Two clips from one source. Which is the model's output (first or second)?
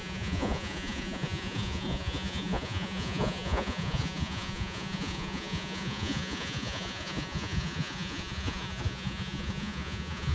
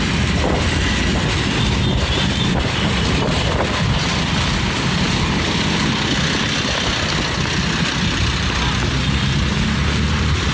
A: first